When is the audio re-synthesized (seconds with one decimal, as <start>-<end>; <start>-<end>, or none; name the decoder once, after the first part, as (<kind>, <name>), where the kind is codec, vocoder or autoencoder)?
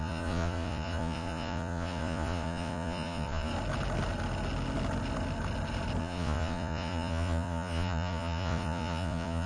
0.0-3.5 (vocoder, Vocos); 6.0-9.5